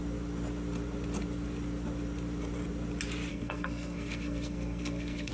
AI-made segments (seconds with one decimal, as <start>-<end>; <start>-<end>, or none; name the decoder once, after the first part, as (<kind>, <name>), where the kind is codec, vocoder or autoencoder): 3.3-5.3 (codec, SNAC)